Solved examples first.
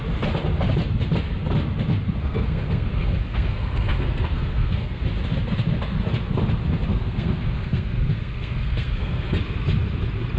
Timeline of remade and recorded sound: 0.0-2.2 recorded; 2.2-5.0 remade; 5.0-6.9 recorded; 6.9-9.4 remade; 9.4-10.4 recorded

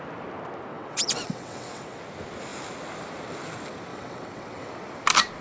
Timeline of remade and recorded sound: 0.0-0.7 recorded; 0.7-2.0 remade; 2.0-3.9 recorded; 3.9-4.7 remade; 4.7-5.4 recorded

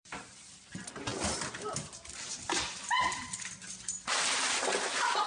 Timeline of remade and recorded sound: 0.0-1.1 remade; 1.1-3.7 recorded; 3.7-5.3 remade

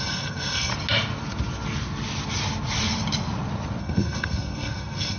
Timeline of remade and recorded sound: 0.0-0.7 remade; 0.7-3.8 recorded; 3.8-5.2 remade

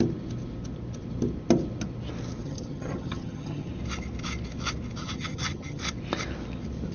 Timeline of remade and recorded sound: 0.0-2.4 recorded; 2.4-3.7 remade; 3.7-5.0 recorded; 5.0-5.8 remade; 5.8-6.9 recorded

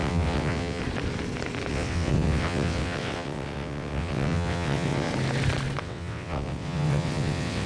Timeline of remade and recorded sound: 0.0-0.8 remade; 0.8-1.7 recorded; 1.7-5.1 remade; 5.1-5.8 recorded; 5.8-7.7 remade

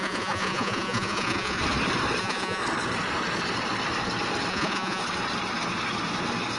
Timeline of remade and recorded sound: 0.0-1.6 remade; 1.6-2.2 recorded; 2.2-2.6 remade; 2.6-4.5 recorded; 4.5-5.0 remade; 5.0-6.6 recorded